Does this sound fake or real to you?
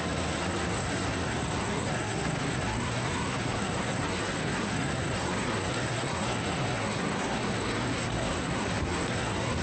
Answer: fake